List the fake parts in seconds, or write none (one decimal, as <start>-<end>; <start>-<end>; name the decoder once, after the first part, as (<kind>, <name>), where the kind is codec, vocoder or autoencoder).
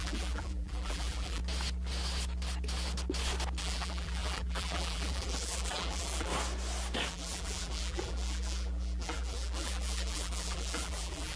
0.0-1.4 (vocoder, BigVGAN v2); 3.6-6.3; 7.1-11.4